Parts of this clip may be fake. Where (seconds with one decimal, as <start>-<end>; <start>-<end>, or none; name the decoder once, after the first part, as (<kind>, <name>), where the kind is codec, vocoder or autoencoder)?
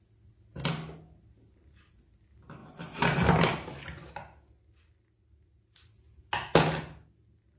2.6-4.1 (vocoder, BigVGAN v2)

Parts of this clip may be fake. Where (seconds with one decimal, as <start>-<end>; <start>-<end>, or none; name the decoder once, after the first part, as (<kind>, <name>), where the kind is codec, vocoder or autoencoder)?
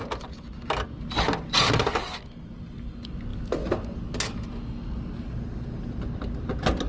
none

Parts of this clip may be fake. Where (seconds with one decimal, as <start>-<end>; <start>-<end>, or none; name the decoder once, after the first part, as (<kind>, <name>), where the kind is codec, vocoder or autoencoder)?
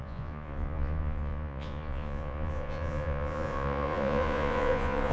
0.0-5.1 (vocoder, Vocos)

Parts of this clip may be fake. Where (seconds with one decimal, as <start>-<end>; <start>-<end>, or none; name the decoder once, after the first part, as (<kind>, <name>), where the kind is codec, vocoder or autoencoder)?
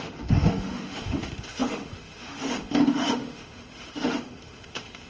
0.0-5.1 (autoencoder, DAC-VAE)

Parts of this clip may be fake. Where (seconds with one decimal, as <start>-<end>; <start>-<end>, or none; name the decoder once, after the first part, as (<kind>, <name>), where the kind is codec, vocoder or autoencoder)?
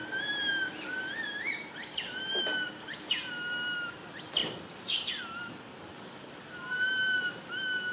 0.0-2.4 (vocoder, BigVGAN v2)